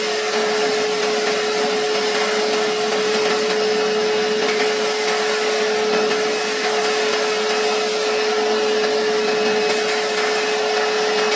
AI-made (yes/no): no